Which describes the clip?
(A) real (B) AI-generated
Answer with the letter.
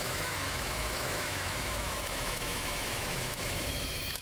B